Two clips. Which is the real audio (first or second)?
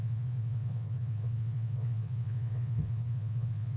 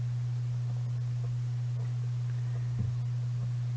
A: second